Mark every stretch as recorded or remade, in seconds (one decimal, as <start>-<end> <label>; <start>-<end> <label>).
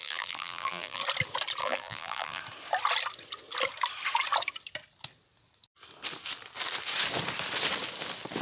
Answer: 0.0-1.0 remade; 1.0-1.6 recorded; 1.6-2.4 remade; 2.4-8.4 recorded